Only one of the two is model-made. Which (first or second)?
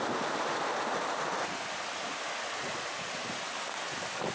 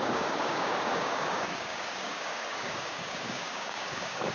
second